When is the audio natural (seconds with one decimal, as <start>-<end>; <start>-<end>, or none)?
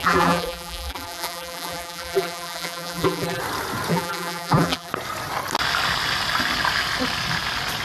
3.4-3.9; 4.9-7.8